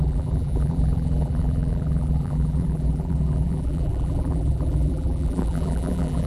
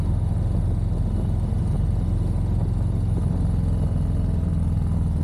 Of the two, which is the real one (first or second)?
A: second